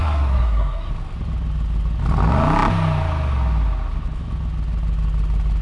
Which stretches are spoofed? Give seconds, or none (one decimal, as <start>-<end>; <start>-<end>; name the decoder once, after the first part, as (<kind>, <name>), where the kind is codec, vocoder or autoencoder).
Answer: 0.0-0.9 (codec, SNAC)